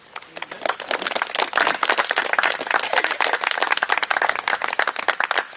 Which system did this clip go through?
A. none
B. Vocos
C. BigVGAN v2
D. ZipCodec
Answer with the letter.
A